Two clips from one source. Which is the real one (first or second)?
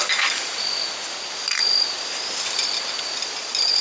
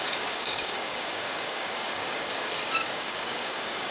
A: first